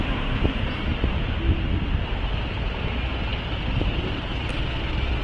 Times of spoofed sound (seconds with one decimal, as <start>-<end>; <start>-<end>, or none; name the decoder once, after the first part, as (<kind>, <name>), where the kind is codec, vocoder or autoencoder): 3.3-4.5 (vocoder, BigVGAN v2)